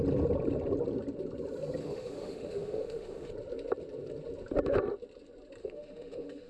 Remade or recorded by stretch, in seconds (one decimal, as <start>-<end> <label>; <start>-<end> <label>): 0.0-1.8 recorded; 1.8-3.3 remade; 3.3-5.6 recorded; 5.6-6.5 remade